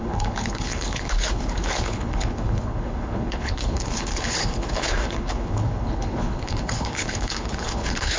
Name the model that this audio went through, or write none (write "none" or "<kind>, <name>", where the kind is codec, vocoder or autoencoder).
codec, HILCodec